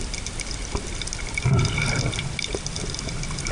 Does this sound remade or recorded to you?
recorded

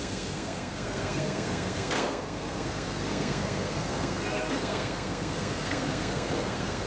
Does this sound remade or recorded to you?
remade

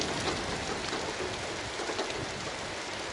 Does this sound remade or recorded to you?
recorded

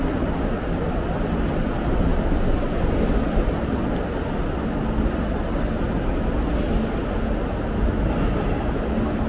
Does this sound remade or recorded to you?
recorded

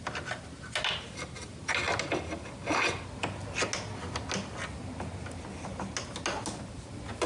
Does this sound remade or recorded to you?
recorded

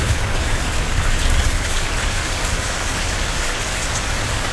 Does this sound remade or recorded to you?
remade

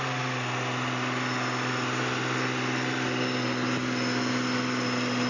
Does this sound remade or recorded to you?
recorded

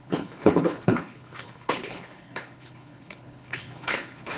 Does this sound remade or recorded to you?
remade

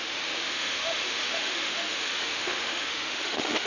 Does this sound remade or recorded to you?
remade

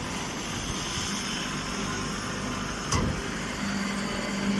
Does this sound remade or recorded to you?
recorded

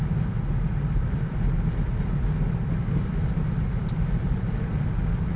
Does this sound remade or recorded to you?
recorded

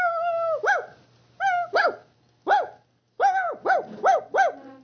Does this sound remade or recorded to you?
recorded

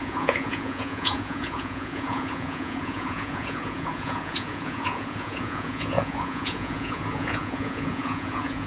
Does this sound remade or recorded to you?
remade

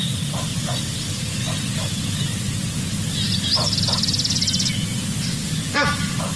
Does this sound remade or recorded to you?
recorded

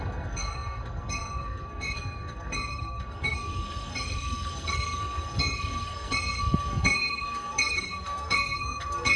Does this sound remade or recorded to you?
remade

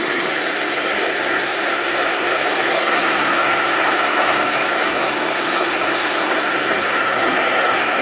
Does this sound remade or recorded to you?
remade